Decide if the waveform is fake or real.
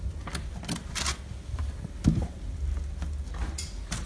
real